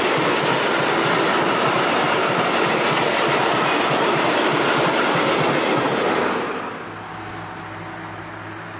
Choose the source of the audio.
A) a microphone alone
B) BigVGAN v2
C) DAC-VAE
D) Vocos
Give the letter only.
A